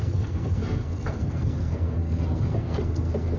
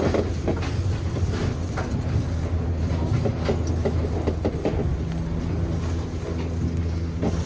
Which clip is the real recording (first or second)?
second